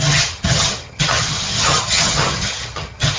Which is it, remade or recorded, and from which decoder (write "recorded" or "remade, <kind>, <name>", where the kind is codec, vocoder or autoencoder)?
remade, vocoder, HiFi-GAN